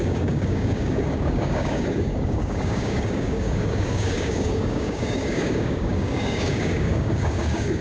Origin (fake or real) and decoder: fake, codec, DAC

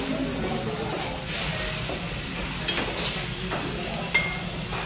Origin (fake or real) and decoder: real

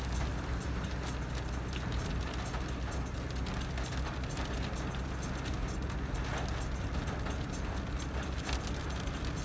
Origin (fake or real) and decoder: real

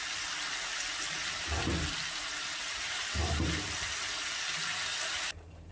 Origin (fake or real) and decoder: real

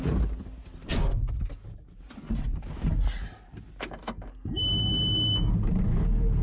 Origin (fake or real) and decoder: real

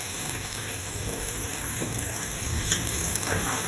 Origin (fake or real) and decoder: fake, codec, DAC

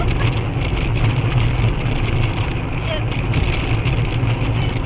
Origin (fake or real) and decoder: real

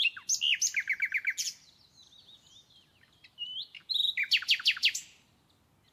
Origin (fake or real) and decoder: real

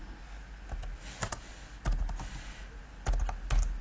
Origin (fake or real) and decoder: real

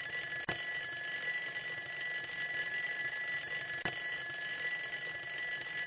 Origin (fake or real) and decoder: real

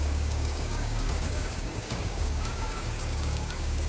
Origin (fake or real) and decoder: fake, codec, DAC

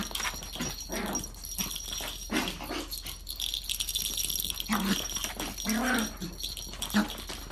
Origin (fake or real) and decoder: real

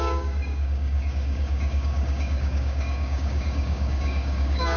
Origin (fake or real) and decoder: fake, codec, DAC